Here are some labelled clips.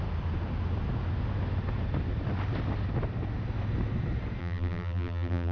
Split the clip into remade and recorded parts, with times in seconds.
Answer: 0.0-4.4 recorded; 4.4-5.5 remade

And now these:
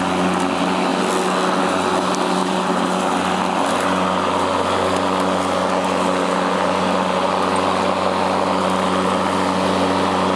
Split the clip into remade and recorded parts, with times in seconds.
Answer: 0.0-2.4 recorded; 2.4-3.0 remade; 3.0-10.4 recorded